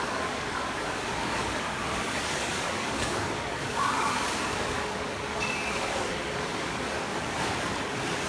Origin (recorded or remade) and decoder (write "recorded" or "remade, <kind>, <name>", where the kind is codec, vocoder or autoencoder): remade, codec, DAC